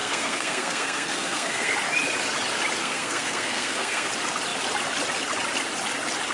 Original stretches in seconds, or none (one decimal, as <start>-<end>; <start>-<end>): 1.7-2.8; 4.1-6.3